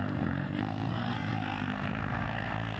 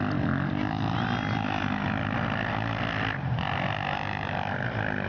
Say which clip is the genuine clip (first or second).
second